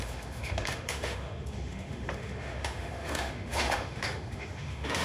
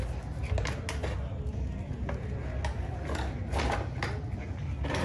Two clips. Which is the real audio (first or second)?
second